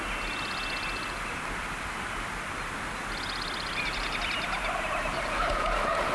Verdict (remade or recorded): recorded